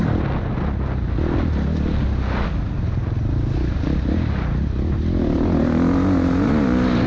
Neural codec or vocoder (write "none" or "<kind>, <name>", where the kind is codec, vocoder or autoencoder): none